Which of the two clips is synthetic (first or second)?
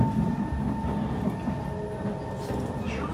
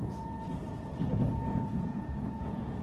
second